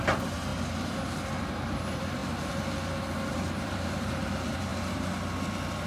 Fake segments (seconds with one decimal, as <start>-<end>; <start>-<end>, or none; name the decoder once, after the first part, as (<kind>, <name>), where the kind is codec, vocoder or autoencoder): 0.0-0.5 (vocoder, BigVGAN v2); 1.4-2.2; 3.3-4.7; 5.5-5.9